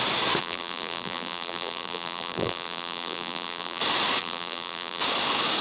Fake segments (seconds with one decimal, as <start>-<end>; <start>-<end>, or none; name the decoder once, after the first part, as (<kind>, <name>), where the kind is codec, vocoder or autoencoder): 0.4-3.8 (vocoder, BigVGAN v2); 4.2-5.0